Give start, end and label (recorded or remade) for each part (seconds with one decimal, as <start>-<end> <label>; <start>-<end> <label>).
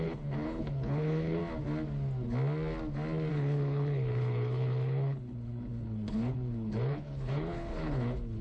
0.0-1.4 remade; 1.4-3.3 recorded; 3.3-8.4 remade